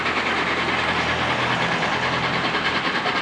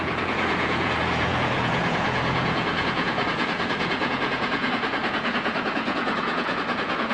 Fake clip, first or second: second